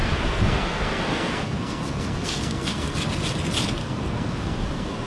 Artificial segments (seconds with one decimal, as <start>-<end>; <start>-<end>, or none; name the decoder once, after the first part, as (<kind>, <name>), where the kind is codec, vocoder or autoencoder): 0.0-3.1 (codec, SNAC); 3.8-5.1